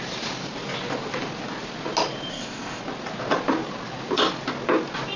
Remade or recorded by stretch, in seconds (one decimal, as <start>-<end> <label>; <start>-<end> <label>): 0.0-2.3 recorded; 2.3-2.8 remade; 2.8-5.2 recorded